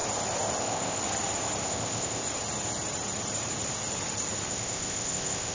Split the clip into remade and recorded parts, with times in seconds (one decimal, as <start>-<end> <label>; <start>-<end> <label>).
0.0-0.6 recorded; 0.6-1.0 remade; 1.0-1.6 recorded; 1.6-2.2 remade; 2.2-4.5 recorded; 4.5-5.5 remade

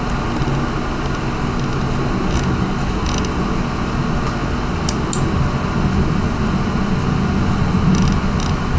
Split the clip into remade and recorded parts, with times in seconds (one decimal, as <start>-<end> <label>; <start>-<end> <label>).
0.0-8.8 recorded